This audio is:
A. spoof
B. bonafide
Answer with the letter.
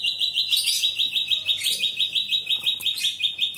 A